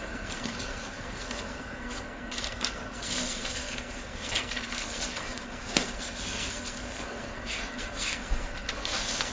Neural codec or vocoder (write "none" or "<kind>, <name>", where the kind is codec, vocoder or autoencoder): codec, SNAC